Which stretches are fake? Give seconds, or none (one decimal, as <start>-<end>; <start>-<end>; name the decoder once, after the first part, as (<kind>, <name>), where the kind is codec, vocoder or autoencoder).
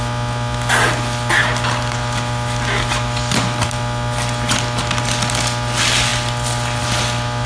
none